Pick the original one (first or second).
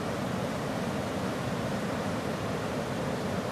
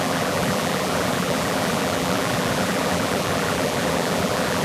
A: first